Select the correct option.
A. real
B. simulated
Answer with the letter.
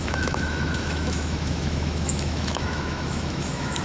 B